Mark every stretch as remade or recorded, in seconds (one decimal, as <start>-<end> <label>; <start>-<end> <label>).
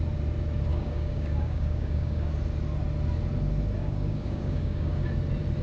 0.0-0.7 recorded; 0.7-2.3 remade; 2.3-3.8 recorded; 3.8-5.0 remade; 5.0-5.6 recorded